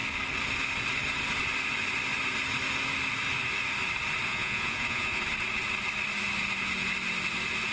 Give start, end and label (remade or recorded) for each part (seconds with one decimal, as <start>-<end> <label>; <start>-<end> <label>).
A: 0.0-4.3 recorded; 4.3-5.2 remade; 5.2-7.7 recorded